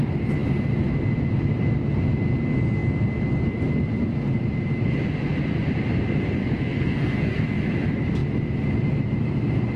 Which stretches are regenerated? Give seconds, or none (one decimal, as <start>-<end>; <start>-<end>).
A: 6.4-7.4